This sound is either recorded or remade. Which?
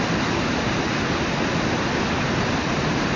recorded